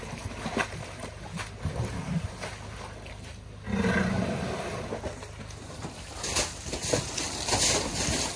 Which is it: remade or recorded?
recorded